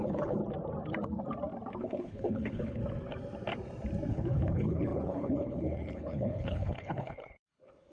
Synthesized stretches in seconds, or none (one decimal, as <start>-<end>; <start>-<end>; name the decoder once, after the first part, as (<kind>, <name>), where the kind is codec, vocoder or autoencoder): 0.0-0.4 (codec, HILCodec); 1.8-2.8; 4.1-7.9